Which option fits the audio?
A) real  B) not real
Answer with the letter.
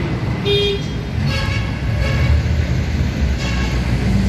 A